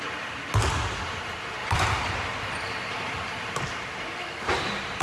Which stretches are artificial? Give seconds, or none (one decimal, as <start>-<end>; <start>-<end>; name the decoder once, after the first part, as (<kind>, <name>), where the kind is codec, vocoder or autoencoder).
1.6-3.5 (vocoder, BigVGAN v2)